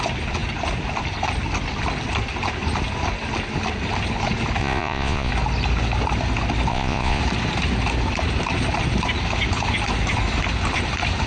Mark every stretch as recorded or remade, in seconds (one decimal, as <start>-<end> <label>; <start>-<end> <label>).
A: 0.0-4.6 recorded; 4.6-5.3 remade; 5.3-6.7 recorded; 6.7-7.2 remade; 7.2-11.3 recorded